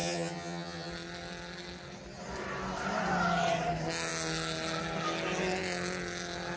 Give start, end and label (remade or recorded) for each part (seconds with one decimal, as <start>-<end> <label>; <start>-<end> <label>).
0.0-0.9 remade; 0.9-6.6 recorded

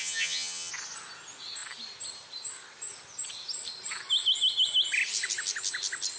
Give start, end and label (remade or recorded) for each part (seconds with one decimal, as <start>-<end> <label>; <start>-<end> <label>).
0.0-0.7 remade; 0.7-6.2 recorded

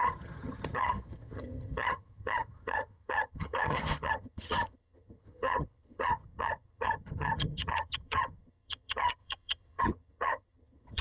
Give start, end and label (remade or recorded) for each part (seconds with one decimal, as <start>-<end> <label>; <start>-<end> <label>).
0.0-11.0 remade

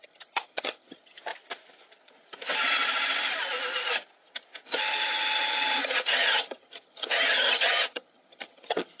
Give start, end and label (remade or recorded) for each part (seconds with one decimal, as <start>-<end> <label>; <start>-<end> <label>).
0.0-1.3 remade; 1.3-4.7 recorded; 4.7-9.0 remade

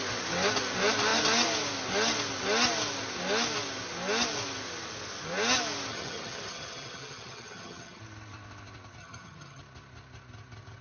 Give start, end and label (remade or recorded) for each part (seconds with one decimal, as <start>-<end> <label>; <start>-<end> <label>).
0.0-5.9 recorded; 5.9-8.0 remade; 8.0-9.0 recorded; 9.0-9.6 remade; 9.6-10.8 recorded

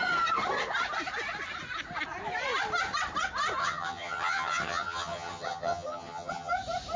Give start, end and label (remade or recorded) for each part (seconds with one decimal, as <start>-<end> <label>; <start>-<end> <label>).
0.0-3.6 recorded; 3.6-6.5 remade; 6.5-7.0 recorded